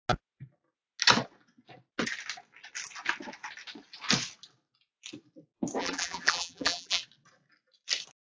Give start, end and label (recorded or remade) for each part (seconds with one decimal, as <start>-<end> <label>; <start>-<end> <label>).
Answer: 0.0-5.8 recorded; 5.8-7.0 remade; 7.0-8.4 recorded